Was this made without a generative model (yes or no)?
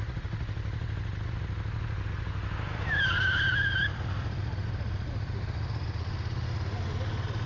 yes